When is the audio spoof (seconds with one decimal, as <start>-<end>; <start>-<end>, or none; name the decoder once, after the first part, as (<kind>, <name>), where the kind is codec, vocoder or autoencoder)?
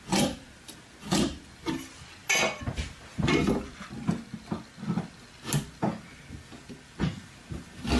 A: none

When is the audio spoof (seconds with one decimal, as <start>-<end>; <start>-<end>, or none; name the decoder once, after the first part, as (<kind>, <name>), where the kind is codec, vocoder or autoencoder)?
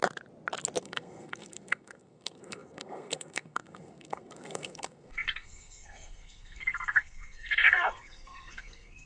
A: 0.8-9.1 (codec, SNAC)